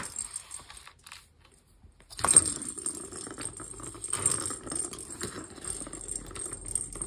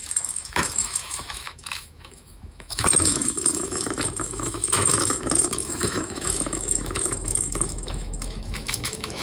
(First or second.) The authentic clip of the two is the first